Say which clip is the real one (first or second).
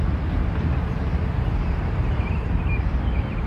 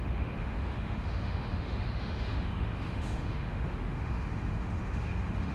first